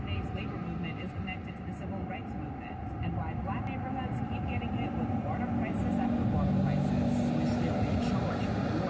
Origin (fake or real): real